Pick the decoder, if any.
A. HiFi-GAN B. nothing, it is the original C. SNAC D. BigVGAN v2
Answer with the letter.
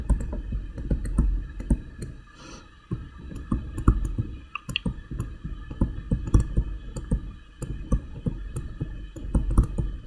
B